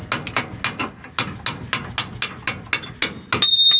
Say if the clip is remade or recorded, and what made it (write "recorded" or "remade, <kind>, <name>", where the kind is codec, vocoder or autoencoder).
recorded